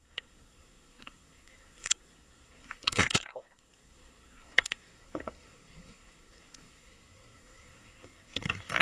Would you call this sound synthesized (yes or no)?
yes